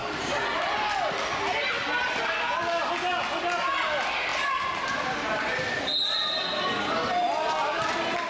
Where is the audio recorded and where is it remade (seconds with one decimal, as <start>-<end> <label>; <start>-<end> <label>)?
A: 0.0-8.3 recorded